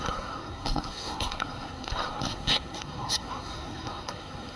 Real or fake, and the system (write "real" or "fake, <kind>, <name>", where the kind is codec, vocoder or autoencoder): fake, codec, SNAC